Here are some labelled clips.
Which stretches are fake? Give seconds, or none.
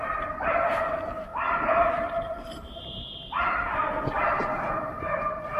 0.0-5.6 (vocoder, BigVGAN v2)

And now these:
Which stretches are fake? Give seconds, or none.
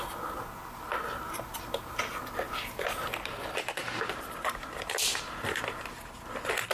3.1-6.0 (vocoder, BigVGAN v2)